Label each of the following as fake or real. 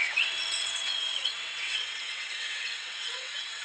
fake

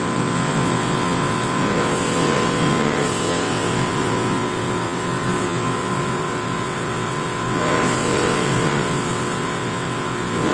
fake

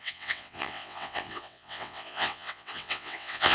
fake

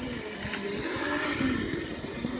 real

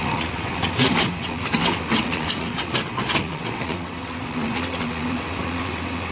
fake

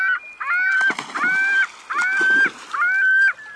real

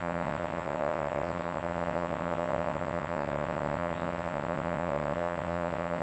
fake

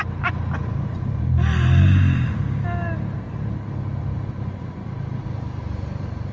real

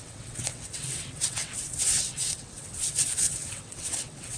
fake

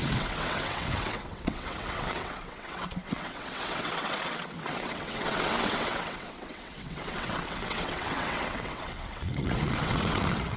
fake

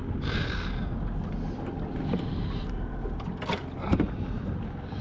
real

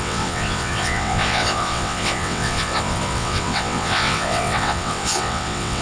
fake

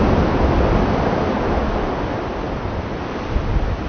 real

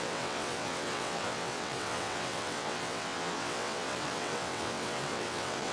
fake